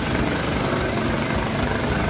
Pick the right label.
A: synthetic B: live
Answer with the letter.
B